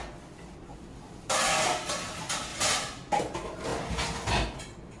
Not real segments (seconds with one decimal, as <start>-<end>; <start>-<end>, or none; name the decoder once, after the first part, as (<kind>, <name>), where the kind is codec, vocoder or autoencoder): none